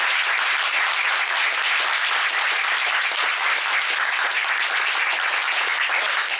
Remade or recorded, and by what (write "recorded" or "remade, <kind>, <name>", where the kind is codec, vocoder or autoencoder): recorded